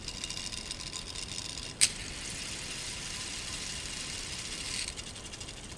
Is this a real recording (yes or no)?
yes